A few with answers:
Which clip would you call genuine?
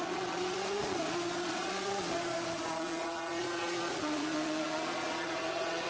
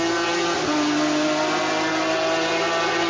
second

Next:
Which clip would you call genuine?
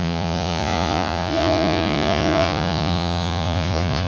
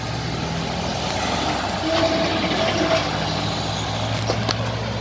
second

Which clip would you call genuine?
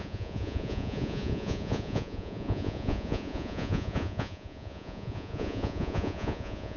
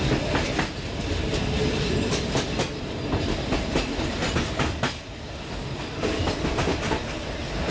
second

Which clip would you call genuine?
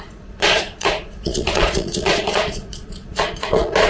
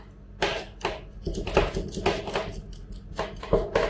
second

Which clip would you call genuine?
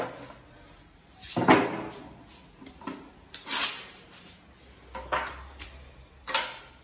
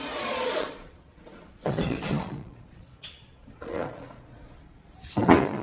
first